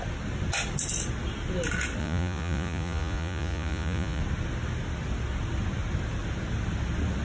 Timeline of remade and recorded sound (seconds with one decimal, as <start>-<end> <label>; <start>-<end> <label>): 0.0-2.0 recorded; 2.0-4.2 remade; 4.2-7.2 recorded